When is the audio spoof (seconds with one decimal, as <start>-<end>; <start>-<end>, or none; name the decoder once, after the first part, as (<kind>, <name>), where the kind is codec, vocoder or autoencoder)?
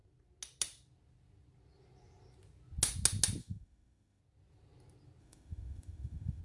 3.4-4.2 (autoencoder, DAC-VAE); 5.2-6.4